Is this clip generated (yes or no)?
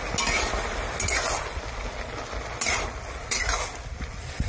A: no